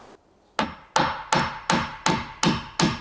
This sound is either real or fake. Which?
real